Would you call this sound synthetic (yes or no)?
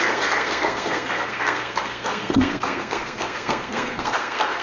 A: yes